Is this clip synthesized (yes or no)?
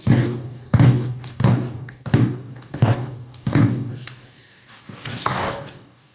yes